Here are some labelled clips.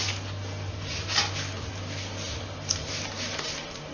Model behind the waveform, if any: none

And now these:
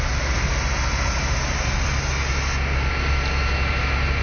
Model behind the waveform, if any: none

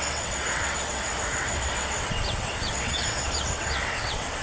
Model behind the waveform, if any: vocoder, WaveNeXt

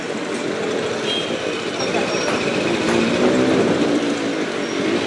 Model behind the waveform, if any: none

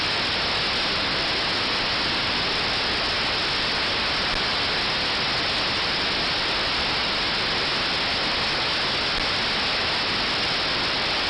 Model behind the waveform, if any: none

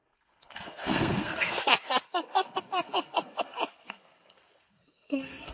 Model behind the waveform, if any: codec, SNAC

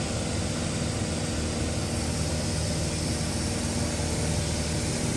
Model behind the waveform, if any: none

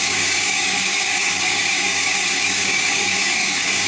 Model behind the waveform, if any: codec, DAC